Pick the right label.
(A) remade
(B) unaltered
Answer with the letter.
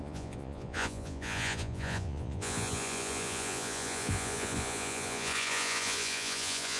A